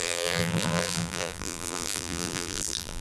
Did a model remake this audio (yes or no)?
yes